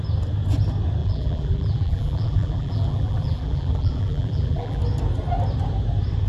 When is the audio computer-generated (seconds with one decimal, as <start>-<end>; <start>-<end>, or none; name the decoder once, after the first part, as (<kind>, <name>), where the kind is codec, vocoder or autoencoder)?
1.0-4.8 (vocoder, BigVGAN v2)